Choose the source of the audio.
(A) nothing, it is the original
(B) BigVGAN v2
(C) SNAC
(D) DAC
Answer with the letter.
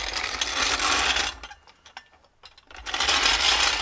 A